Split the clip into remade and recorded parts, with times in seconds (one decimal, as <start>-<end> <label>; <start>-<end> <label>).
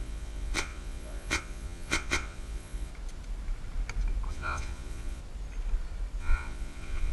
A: 0.0-2.9 remade; 2.9-4.3 recorded; 4.3-5.2 remade; 5.2-6.2 recorded; 6.2-7.1 remade